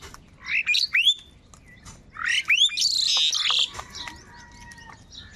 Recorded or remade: recorded